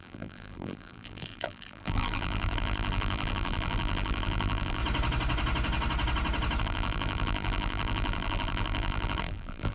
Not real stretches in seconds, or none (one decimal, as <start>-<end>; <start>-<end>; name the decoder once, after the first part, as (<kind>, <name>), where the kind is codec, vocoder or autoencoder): 0.0-4.8 (vocoder, BigVGAN v2); 6.6-9.7